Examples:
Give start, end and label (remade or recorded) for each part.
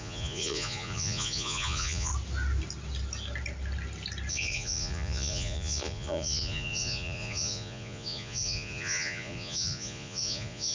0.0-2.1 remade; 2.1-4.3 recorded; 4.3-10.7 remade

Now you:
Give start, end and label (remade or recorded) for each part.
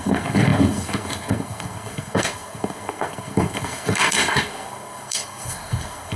0.0-6.2 remade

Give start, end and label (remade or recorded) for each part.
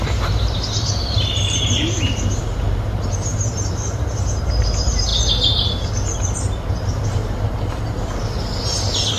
0.0-5.1 remade; 5.1-6.7 recorded; 6.7-7.2 remade; 7.2-9.2 recorded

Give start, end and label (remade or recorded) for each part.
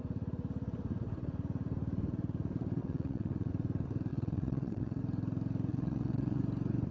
0.0-2.8 recorded; 2.8-3.5 remade; 3.5-4.1 recorded; 4.1-5.0 remade; 5.0-5.7 recorded; 5.7-6.4 remade; 6.4-6.9 recorded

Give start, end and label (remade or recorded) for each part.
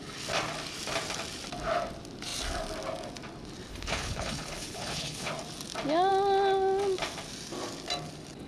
0.0-3.7 recorded; 3.7-5.3 remade; 5.3-8.5 recorded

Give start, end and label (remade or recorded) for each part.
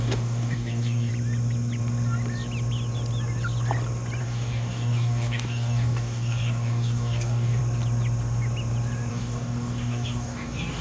0.0-1.1 remade; 1.1-4.2 recorded; 4.2-7.6 remade; 7.6-9.1 recorded; 9.1-10.8 remade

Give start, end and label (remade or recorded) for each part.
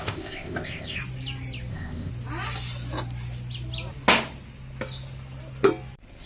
0.0-1.0 remade; 1.0-1.7 recorded; 1.7-2.1 remade; 2.1-6.3 recorded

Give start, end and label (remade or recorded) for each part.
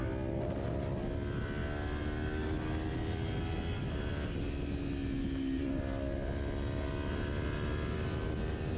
0.0-8.8 recorded